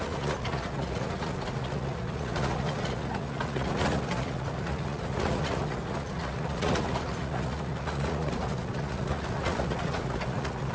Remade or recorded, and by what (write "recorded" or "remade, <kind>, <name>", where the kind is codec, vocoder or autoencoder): remade, vocoder, Vocos